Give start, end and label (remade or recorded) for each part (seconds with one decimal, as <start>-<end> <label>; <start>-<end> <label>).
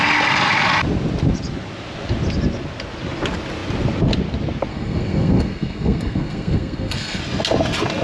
0.0-4.7 recorded; 4.7-7.2 remade; 7.2-8.0 recorded